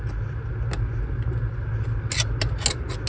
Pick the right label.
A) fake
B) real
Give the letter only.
B